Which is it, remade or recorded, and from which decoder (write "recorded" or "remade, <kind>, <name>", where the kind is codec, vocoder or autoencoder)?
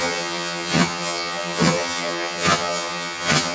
remade, vocoder, HiFi-GAN